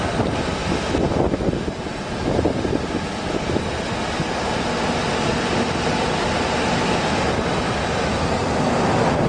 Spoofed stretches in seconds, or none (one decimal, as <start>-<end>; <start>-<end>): none